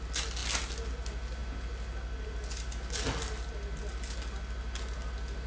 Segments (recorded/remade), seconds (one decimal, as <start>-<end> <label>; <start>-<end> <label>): 0.0-5.5 recorded